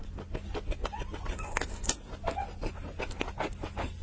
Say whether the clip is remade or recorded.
recorded